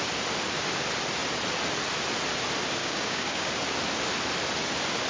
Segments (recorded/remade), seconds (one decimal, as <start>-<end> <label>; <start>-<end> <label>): 0.0-2.8 recorded; 2.8-3.5 remade; 3.5-5.1 recorded